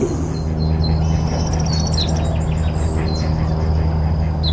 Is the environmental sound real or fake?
real